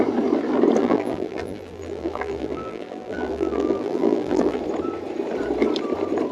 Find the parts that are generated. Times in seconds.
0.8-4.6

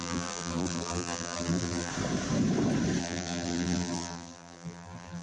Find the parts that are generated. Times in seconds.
0.0-1.9; 3.0-5.2

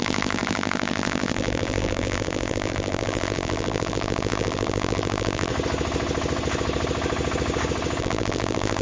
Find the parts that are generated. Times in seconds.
0.0-5.5; 8.0-8.8

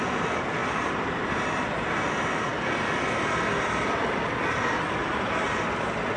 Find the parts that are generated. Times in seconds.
0.6-1.2; 5.0-5.7

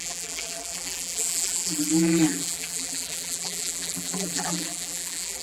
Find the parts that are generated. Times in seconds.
0.0-5.4

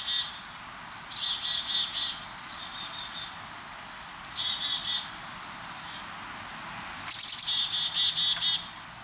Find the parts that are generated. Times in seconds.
1.9-6.0

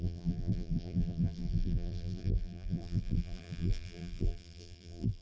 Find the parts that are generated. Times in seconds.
0.0-5.2